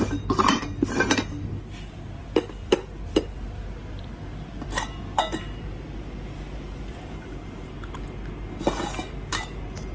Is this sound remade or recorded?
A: recorded